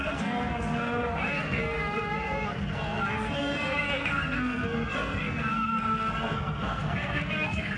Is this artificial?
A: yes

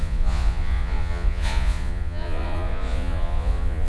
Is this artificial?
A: yes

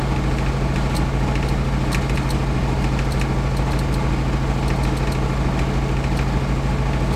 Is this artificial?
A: no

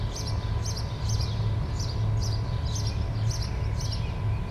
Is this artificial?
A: no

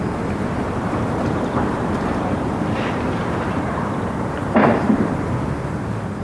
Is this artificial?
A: yes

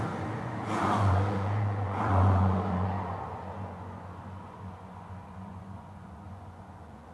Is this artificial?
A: yes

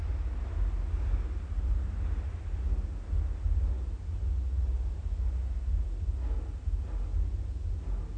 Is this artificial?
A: no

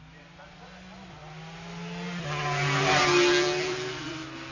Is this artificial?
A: no